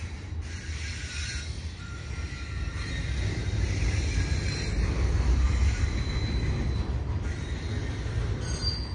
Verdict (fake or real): real